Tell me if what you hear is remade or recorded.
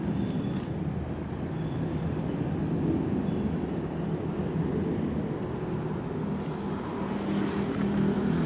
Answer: recorded